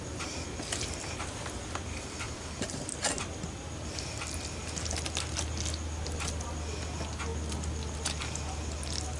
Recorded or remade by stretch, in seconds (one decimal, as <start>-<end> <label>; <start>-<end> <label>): 0.0-9.2 recorded